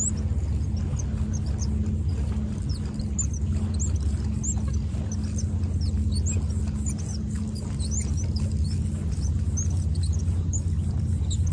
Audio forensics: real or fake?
real